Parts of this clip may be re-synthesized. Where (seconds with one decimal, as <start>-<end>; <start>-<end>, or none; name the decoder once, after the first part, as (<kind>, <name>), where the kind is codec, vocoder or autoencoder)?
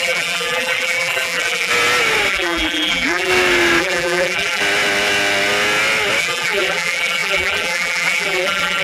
0.0-1.7 (vocoder, BigVGAN v2); 2.3-3.3; 3.8-4.6; 6.2-8.8